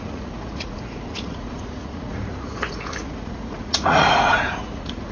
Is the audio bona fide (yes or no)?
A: no